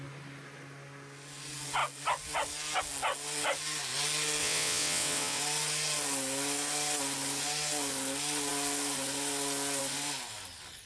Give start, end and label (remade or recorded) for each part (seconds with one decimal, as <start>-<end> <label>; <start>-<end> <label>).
0.0-4.4 recorded; 4.4-5.4 remade; 5.4-10.9 recorded